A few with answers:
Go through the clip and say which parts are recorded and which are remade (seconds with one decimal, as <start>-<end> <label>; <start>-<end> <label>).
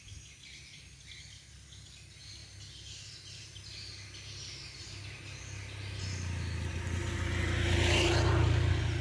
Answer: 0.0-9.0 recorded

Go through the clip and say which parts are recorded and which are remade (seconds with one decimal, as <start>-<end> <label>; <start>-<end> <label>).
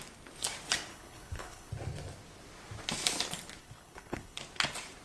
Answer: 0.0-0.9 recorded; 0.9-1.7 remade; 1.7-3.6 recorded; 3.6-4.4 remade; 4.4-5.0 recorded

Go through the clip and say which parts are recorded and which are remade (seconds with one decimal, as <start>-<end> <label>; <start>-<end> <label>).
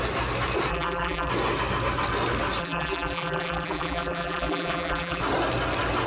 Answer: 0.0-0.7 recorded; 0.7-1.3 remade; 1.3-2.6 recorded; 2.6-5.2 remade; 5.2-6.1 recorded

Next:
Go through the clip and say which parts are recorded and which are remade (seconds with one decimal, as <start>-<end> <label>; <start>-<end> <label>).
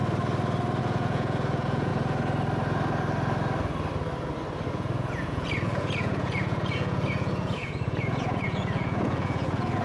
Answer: 0.0-0.8 recorded; 0.8-1.9 remade; 1.9-4.7 recorded; 4.7-9.8 remade